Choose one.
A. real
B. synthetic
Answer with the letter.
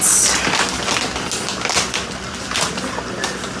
A